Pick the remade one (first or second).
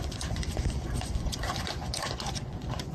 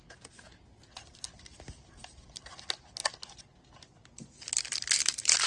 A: first